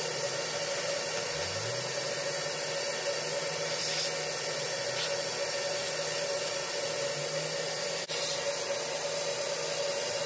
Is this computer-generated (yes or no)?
no